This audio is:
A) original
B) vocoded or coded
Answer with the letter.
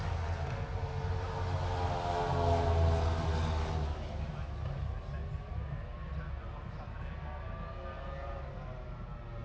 A